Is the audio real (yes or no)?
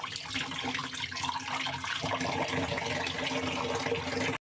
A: yes